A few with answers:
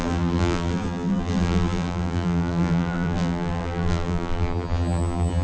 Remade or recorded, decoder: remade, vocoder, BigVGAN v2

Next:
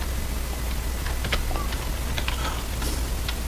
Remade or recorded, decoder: recorded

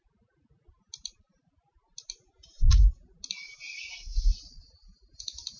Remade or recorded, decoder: recorded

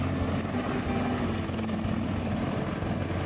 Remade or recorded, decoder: recorded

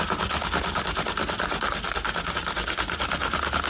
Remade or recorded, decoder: recorded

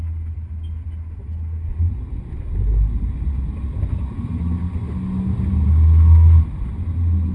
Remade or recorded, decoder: recorded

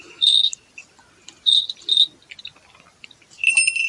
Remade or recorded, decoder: recorded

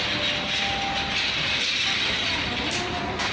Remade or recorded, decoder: recorded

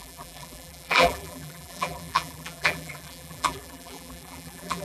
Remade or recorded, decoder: remade, vocoder, BigVGAN v2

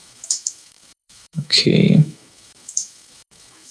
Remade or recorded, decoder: remade, autoencoder, DAC-VAE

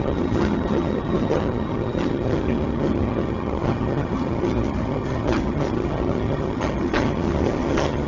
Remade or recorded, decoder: remade, vocoder, HiFi-GAN